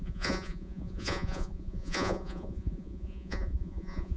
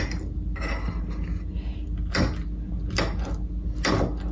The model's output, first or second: first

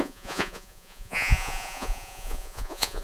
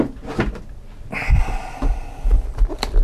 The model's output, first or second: first